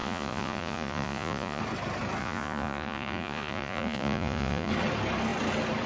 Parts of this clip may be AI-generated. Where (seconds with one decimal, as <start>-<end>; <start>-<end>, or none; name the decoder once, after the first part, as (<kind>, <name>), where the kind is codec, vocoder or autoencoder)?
0.0-1.6 (vocoder, Vocos); 2.2-4.7